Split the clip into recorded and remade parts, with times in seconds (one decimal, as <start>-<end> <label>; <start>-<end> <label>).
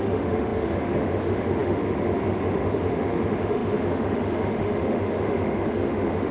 0.0-6.3 remade